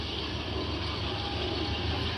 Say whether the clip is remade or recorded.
recorded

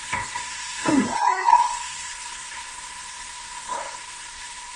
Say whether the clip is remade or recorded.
remade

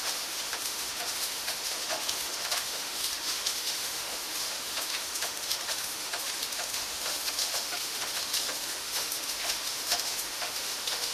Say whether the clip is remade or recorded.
remade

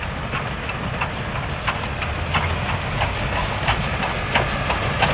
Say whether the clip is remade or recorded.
recorded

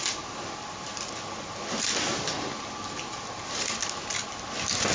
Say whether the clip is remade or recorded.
recorded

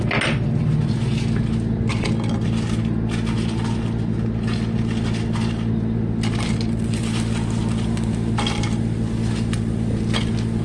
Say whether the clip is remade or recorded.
recorded